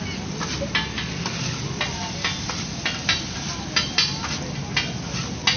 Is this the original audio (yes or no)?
yes